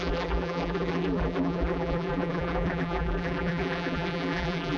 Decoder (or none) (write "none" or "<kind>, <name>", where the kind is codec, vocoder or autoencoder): vocoder, BigVGAN v2